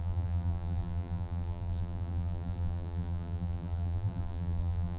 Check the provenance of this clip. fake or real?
fake